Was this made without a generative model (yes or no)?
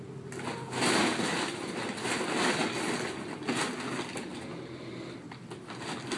yes